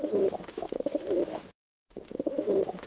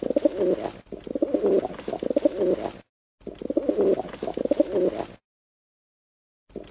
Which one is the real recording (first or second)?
second